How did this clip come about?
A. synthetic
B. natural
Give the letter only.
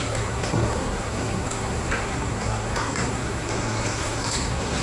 A